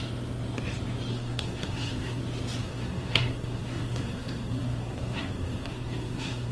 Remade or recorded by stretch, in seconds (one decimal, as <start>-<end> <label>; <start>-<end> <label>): 0.0-1.1 recorded; 1.1-2.2 remade; 2.2-2.6 recorded; 2.6-6.5 remade

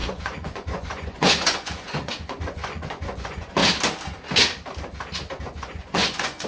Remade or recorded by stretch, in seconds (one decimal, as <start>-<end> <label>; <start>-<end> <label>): 0.0-3.6 remade; 3.6-5.4 recorded; 5.4-6.5 remade